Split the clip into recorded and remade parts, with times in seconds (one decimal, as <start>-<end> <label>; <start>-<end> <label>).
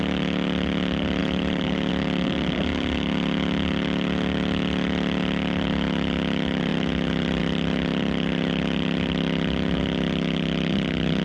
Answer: 0.0-1.2 recorded; 1.2-1.9 remade; 1.9-11.2 recorded